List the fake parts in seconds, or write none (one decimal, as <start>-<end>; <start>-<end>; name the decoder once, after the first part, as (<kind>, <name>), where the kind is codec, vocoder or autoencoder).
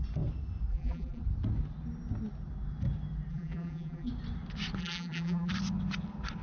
0.7-1.2 (vocoder, BigVGAN v2); 3.3-4.1; 4.8-5.5